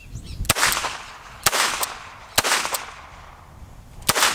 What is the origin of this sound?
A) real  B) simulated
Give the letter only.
A